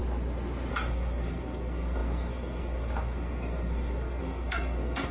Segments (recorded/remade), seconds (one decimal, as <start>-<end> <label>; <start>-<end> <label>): 0.0-0.7 recorded; 0.7-5.1 remade

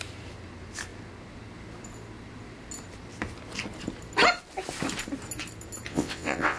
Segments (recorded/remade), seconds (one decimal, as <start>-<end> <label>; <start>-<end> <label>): 0.0-5.9 recorded; 5.9-6.6 remade

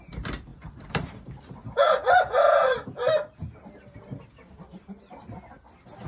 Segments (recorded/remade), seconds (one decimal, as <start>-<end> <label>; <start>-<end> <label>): 0.0-0.5 recorded; 0.5-4.2 remade; 4.2-6.1 recorded

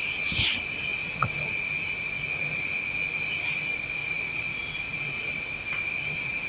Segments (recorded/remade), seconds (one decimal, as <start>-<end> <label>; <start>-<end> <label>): 0.0-0.9 recorded; 0.9-1.4 remade; 1.4-4.0 recorded; 4.0-5.3 remade; 5.3-6.5 recorded

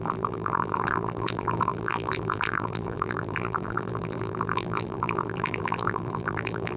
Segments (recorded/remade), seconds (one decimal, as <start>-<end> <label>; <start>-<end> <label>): 0.0-6.8 remade

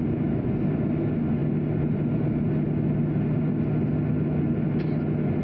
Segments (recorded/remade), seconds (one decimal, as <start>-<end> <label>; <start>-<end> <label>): 0.0-5.4 recorded

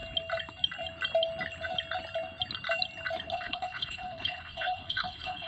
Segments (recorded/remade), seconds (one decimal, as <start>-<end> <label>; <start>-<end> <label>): 0.0-3.3 recorded; 3.3-5.5 remade